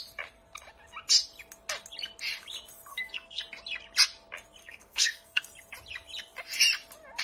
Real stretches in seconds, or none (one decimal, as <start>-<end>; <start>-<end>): 0.0-2.9; 3.4-4.6; 5.4-7.2